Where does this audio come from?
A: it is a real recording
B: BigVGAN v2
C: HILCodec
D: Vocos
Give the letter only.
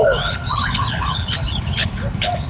C